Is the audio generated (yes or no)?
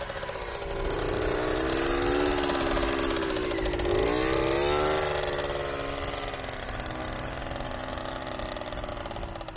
no